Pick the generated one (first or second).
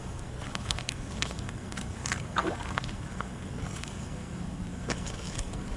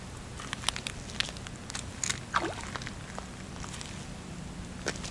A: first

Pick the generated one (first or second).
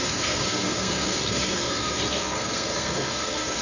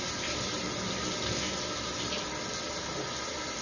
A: first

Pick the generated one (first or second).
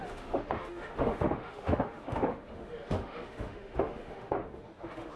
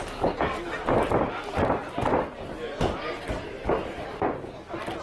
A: first